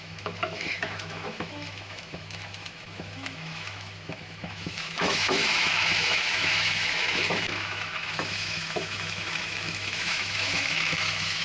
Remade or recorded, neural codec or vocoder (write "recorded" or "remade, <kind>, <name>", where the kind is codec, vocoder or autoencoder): remade, autoencoder, DAC-VAE